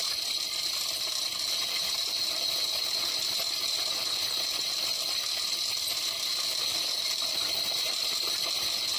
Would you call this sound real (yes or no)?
yes